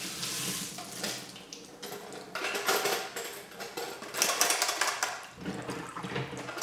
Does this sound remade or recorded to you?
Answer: recorded